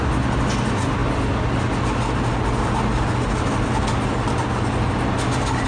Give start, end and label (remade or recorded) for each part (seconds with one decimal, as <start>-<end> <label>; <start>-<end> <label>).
0.0-5.7 recorded